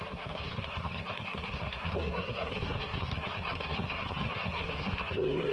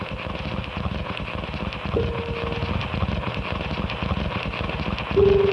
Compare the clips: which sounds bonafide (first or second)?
second